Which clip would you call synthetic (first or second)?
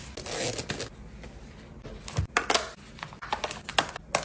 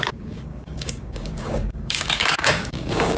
second